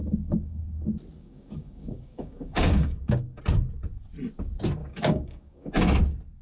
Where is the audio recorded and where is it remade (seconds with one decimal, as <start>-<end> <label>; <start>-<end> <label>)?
0.0-0.6 remade; 0.6-1.2 recorded; 1.2-3.4 remade; 3.4-4.8 recorded; 4.8-5.7 remade; 5.7-6.4 recorded